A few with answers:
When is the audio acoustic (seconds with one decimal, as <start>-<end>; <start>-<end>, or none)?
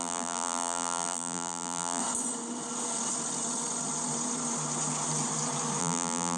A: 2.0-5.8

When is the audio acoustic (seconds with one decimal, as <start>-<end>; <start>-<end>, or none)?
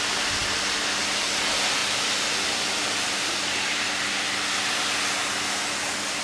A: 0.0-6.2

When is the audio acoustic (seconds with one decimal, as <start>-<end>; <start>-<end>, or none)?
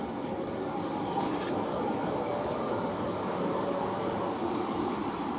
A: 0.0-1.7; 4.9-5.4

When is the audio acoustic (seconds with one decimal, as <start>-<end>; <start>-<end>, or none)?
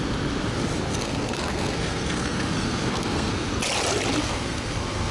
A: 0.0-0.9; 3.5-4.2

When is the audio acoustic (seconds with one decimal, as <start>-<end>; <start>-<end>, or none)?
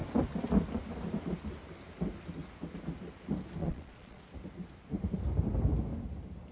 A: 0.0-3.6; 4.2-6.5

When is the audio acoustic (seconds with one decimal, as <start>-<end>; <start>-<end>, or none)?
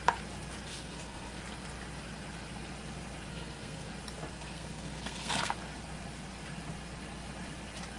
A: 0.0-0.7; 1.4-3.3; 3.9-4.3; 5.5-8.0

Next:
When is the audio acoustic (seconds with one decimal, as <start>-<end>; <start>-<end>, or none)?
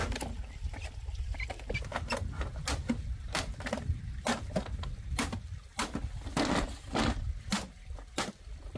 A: 0.0-8.8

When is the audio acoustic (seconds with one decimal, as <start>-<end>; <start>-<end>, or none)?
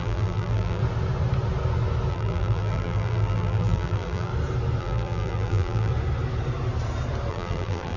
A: 0.8-2.1; 4.3-4.8; 5.9-7.3